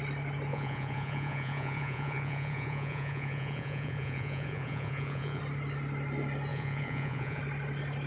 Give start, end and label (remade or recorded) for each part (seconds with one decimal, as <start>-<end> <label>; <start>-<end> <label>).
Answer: 0.0-0.5 recorded; 0.5-5.4 remade; 5.4-6.5 recorded; 6.5-7.4 remade; 7.4-8.1 recorded